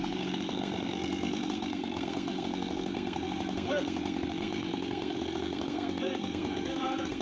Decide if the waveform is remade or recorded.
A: remade